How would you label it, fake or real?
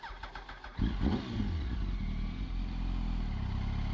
real